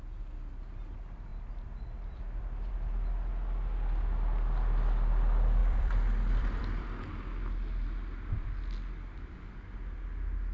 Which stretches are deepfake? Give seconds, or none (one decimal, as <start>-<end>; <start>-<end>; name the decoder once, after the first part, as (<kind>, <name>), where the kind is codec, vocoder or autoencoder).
1.3-2.7 (vocoder, BigVGAN v2); 5.6-7.0